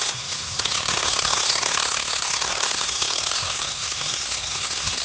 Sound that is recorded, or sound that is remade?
remade